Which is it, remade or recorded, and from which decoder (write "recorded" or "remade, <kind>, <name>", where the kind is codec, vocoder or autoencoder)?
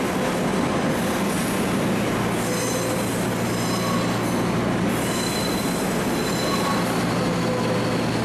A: recorded